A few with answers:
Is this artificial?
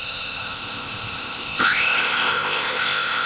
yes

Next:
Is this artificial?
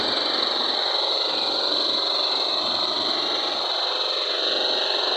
no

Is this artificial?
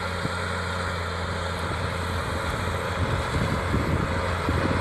no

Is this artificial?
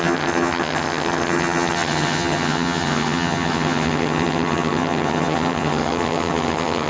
yes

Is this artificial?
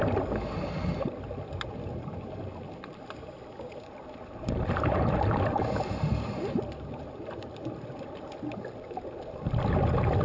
no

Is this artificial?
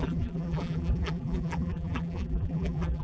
yes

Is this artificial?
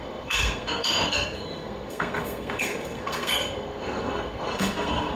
yes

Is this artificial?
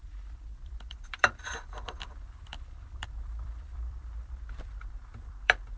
yes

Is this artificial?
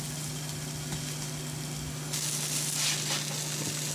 no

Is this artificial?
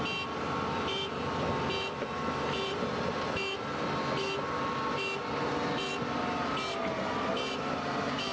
no